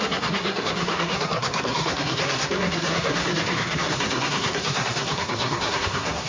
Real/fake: fake